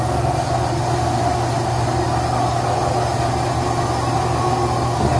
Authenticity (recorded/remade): recorded